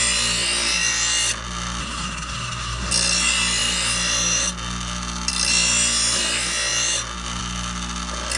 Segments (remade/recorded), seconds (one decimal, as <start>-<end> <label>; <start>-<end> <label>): 0.0-1.8 recorded; 1.8-2.9 remade; 2.9-8.4 recorded